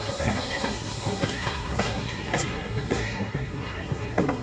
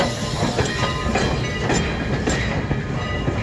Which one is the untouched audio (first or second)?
second